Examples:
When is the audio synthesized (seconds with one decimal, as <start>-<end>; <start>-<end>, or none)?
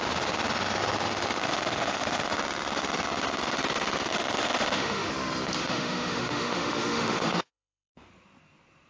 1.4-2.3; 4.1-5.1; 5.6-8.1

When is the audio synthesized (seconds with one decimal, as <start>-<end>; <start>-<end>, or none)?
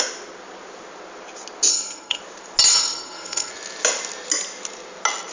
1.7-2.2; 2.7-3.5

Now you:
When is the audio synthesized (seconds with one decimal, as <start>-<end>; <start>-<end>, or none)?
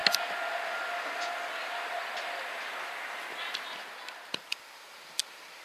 3.4-5.6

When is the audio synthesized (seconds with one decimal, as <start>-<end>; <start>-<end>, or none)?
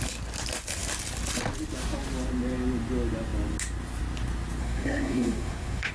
4.6-5.9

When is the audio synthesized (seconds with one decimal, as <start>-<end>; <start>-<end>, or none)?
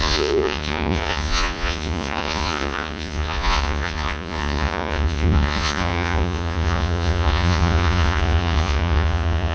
0.0-9.5